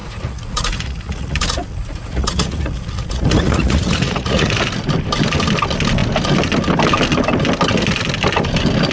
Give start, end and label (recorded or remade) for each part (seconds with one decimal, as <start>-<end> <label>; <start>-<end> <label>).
0.0-4.5 remade; 4.5-8.9 recorded